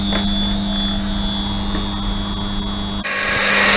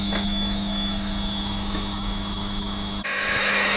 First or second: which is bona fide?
first